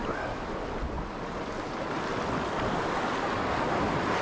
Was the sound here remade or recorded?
recorded